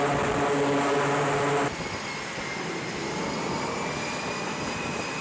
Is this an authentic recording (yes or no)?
yes